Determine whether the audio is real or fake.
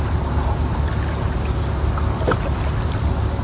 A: real